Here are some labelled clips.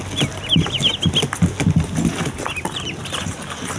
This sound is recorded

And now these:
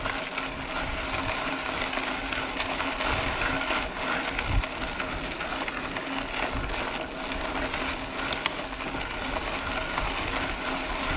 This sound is recorded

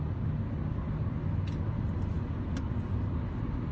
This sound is recorded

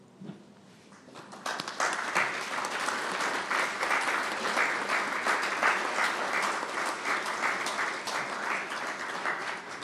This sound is recorded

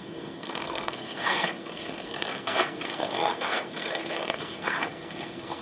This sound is remade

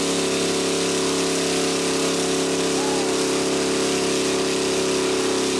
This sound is recorded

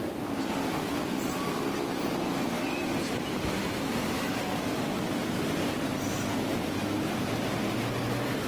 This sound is recorded